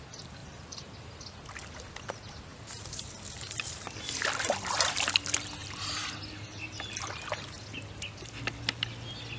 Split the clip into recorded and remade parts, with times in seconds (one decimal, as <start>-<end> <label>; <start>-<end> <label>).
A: 0.0-0.4 recorded; 0.4-0.9 remade; 0.9-2.5 recorded; 2.5-3.1 remade; 3.1-9.4 recorded